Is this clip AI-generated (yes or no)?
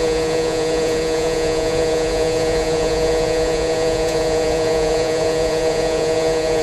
yes